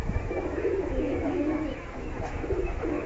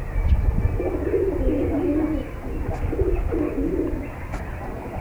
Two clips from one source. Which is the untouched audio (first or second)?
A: second